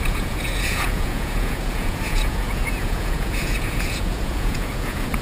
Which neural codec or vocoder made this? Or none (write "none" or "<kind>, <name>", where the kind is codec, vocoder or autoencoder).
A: vocoder, Vocos